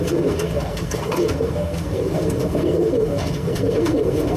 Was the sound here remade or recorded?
remade